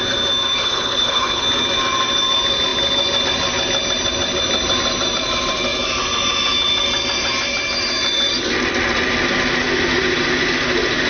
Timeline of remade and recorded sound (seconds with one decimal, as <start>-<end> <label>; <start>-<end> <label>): 0.0-0.6 recorded; 0.6-1.4 remade; 1.4-11.1 recorded